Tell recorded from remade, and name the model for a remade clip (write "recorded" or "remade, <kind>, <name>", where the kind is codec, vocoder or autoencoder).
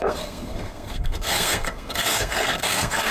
remade, codec, SNAC